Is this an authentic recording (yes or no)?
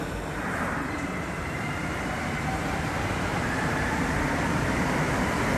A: no